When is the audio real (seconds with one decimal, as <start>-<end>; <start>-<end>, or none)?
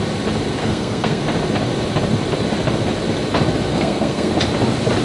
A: 0.0-0.6; 1.2-3.7; 4.3-5.0